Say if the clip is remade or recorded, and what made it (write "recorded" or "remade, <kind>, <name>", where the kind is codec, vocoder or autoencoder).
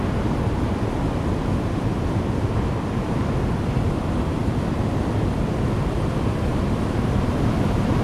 remade, vocoder, BigVGAN v2